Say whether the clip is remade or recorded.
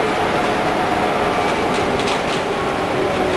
recorded